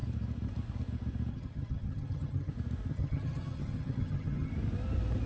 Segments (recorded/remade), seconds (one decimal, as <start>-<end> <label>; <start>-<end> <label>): 0.0-1.3 recorded; 1.3-2.5 remade; 2.5-2.9 recorded; 2.9-4.5 remade; 4.5-5.3 recorded